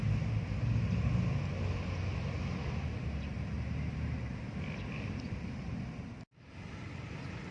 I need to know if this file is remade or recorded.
recorded